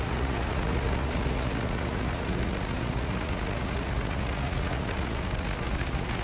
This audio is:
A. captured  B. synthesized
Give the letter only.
B